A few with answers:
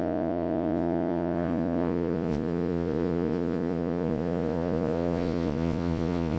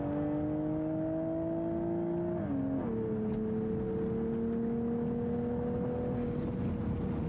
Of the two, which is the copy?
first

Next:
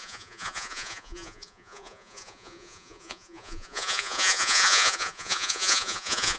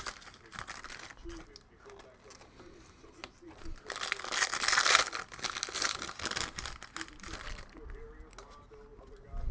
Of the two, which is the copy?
first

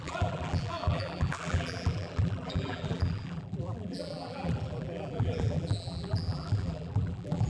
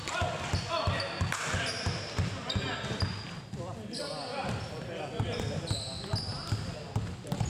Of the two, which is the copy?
first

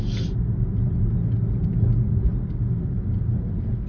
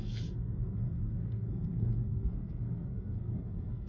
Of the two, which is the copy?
second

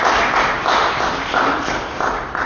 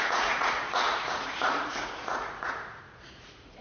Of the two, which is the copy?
second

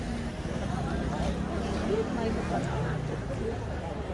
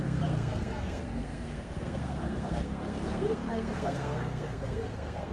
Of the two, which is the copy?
second